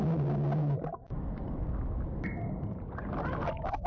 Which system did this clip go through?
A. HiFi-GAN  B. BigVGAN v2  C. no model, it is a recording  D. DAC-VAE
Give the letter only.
C